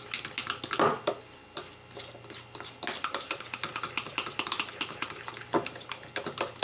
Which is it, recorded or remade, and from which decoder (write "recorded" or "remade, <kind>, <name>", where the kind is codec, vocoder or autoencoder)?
recorded